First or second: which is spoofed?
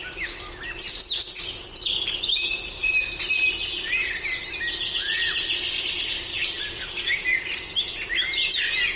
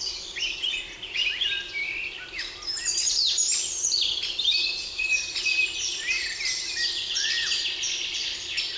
second